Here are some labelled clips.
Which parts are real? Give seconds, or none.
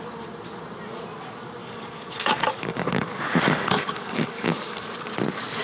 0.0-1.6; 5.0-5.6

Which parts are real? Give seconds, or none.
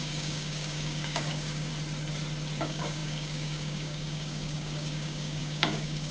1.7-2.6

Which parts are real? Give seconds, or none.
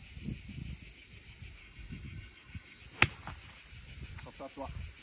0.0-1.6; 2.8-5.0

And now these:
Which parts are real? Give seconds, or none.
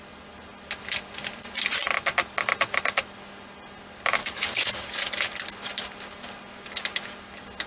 0.0-4.2; 4.7-7.7